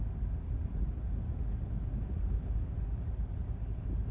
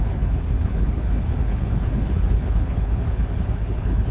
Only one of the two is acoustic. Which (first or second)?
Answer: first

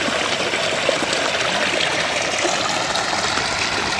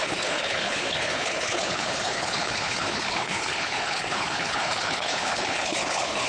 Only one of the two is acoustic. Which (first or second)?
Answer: first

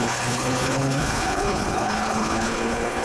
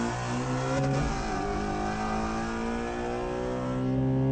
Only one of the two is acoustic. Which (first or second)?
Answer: second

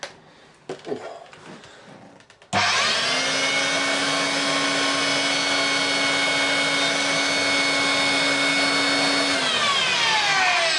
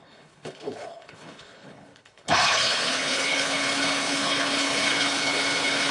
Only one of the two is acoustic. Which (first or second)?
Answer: first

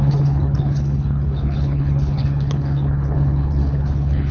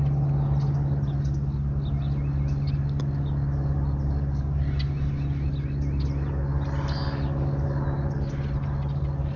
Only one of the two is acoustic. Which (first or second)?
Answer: second